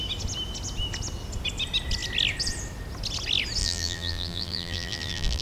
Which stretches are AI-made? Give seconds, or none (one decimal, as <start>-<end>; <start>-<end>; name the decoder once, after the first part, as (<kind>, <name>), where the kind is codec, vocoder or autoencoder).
3.6-5.4 (vocoder, BigVGAN v2)